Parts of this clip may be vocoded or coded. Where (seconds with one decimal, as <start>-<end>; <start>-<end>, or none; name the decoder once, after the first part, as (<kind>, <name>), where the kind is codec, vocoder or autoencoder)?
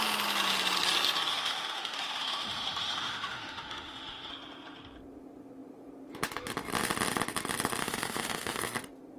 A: 1.3-4.3 (autoencoder, DAC-VAE); 7.8-8.6